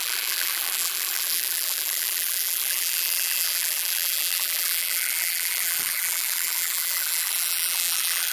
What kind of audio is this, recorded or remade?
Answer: remade